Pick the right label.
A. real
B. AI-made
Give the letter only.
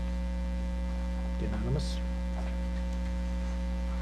A